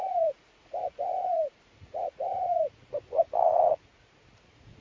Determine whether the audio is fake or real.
fake